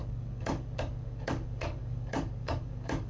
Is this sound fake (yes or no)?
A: yes